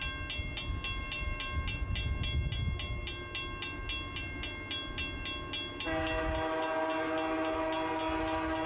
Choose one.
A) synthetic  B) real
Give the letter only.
B